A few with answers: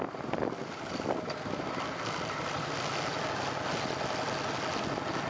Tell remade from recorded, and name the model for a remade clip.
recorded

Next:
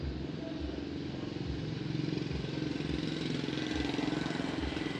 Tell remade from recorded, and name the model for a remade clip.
recorded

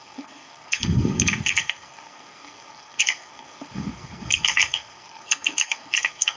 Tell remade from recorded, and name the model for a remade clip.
remade, codec, SNAC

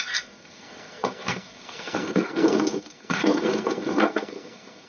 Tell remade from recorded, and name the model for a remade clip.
remade, codec, SNAC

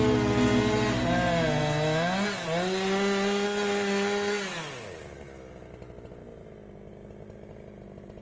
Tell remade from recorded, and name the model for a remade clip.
recorded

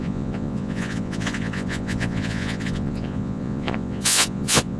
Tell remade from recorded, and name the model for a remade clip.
remade, vocoder, Vocos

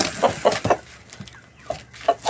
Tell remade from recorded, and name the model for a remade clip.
recorded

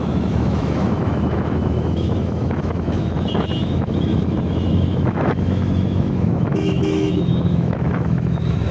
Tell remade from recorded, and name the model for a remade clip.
remade, autoencoder, DAC-VAE